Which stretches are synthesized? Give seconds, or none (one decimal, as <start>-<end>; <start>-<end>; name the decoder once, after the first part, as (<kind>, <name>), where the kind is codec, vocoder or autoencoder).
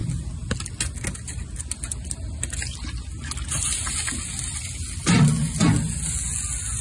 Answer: none